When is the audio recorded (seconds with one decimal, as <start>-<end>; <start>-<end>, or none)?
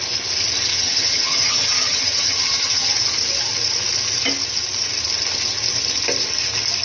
0.0-0.7; 2.9-6.8